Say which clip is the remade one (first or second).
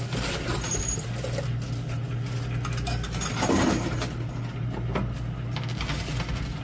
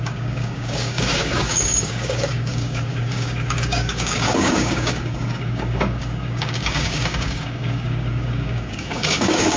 second